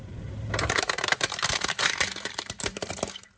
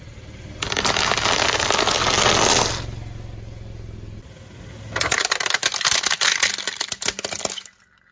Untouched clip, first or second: second